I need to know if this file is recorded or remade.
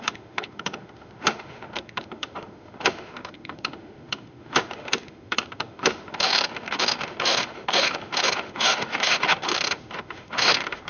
remade